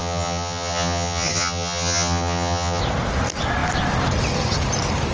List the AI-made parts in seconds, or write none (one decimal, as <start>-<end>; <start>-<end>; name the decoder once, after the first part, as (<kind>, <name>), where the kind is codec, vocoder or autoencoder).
0.0-2.8 (vocoder, HiFi-GAN)